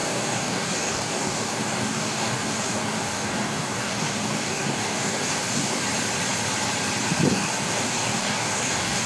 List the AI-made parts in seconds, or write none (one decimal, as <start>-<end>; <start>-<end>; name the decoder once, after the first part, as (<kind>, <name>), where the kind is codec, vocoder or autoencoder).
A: 0.0-5.8 (codec, DAC); 7.3-9.1